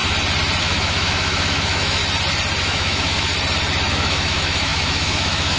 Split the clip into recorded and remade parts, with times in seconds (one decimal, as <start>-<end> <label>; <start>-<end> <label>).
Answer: 0.0-0.6 recorded; 0.6-2.0 remade; 2.0-2.6 recorded; 2.6-3.3 remade; 3.3-3.9 recorded; 3.9-5.6 remade